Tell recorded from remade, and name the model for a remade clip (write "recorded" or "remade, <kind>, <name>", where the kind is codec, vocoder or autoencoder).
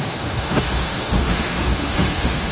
remade, autoencoder, DAC-VAE